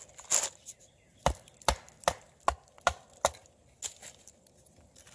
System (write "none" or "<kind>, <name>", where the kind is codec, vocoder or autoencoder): none